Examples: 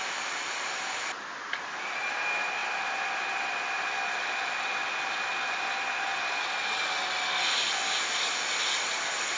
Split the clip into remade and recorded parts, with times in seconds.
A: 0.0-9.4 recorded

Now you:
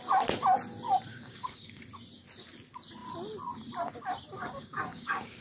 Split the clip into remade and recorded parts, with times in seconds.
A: 0.0-1.1 recorded; 1.1-1.8 remade; 1.8-4.4 recorded; 4.4-5.4 remade

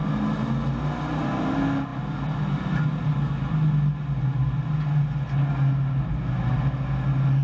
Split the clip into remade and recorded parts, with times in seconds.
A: 0.0-7.4 recorded

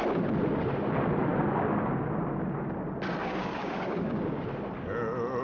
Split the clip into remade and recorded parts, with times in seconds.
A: 0.0-3.2 recorded; 3.2-4.4 remade; 4.4-5.4 recorded

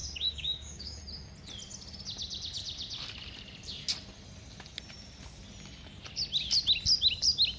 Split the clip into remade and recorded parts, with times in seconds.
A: 0.0-1.0 remade; 1.0-7.6 recorded

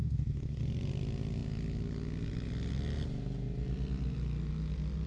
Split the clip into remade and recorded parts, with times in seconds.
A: 0.0-0.6 remade; 0.6-5.1 recorded

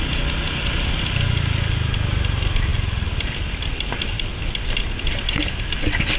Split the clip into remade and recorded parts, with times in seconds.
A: 0.0-6.2 recorded